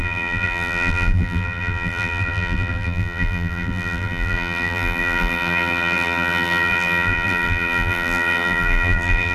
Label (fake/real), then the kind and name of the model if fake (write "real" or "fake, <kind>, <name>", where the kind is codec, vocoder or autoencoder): fake, vocoder, BigVGAN v2